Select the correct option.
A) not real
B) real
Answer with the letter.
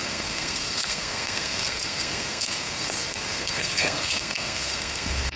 A